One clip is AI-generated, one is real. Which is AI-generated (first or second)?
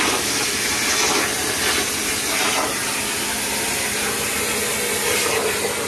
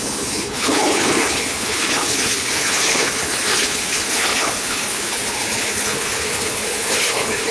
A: second